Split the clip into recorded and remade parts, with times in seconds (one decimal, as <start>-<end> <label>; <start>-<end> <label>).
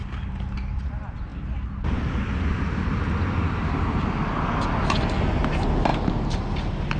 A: 0.0-7.0 recorded